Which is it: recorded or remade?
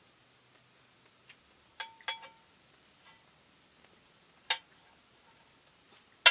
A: recorded